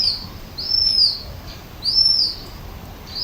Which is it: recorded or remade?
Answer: recorded